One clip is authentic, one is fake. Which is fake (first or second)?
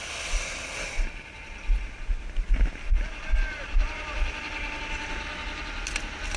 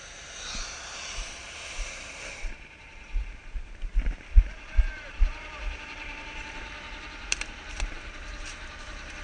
second